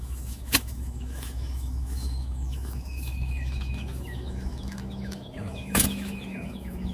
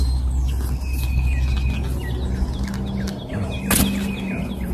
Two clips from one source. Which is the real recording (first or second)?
second